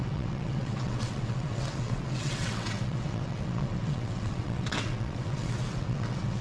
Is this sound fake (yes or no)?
yes